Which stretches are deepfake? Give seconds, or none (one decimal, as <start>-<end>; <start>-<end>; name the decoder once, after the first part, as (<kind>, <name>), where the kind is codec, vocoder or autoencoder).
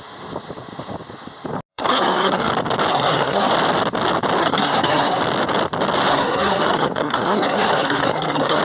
1.7-2.5 (codec, SNAC); 2.9-3.5; 4.4-5.2; 6.1-8.6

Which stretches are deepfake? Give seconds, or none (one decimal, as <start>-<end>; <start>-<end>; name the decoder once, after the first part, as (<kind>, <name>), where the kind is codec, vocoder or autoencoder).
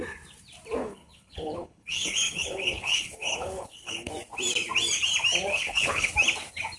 0.8-4.1 (codec, HILCodec); 5.5-6.1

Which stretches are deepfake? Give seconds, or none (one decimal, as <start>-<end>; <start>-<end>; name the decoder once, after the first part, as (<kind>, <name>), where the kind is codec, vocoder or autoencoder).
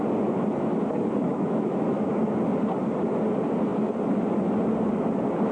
1.3-2.1 (autoencoder, DAC-VAE)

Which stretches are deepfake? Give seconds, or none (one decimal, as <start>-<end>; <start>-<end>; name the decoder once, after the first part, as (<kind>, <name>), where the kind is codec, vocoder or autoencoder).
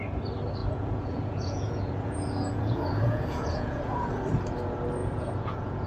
0.6-4.1 (vocoder, Vocos); 5.0-5.9